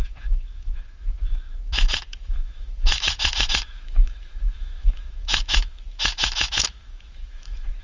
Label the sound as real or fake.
fake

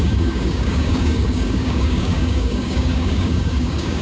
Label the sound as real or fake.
fake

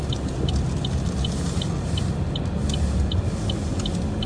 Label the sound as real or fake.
real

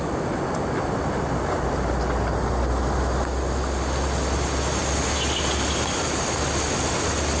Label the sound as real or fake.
real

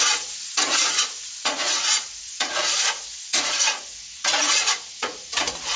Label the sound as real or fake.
fake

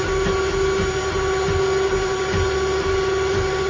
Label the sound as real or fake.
real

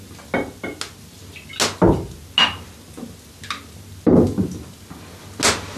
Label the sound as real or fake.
real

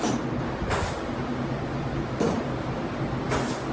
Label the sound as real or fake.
real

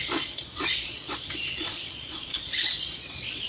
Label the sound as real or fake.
fake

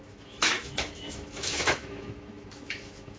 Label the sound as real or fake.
fake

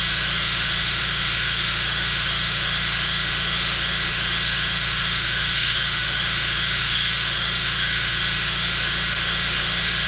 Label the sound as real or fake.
fake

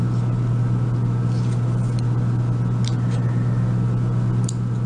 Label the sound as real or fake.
real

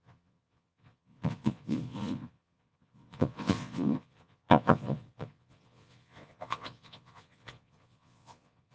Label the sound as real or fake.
fake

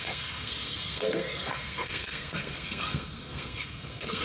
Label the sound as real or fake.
fake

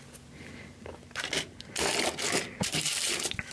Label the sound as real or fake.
real